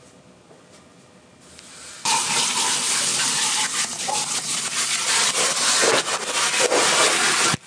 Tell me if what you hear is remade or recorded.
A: recorded